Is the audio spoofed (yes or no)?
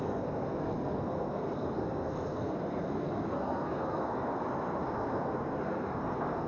yes